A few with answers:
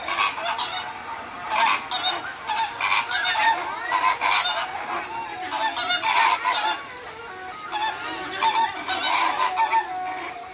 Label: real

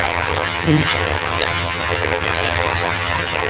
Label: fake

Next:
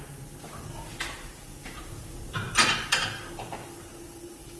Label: real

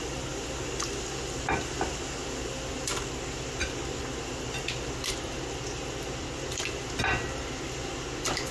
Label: real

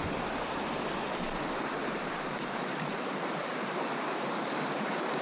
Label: fake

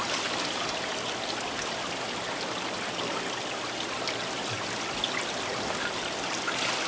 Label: real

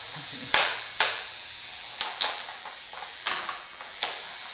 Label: fake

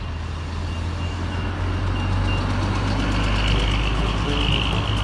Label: real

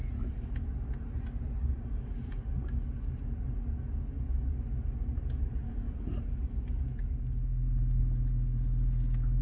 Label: real